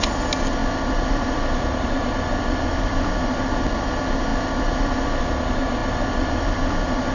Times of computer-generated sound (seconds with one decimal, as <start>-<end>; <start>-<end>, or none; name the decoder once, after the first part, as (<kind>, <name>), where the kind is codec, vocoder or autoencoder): 0.6-3.2 (vocoder, BigVGAN v2); 5.8-6.5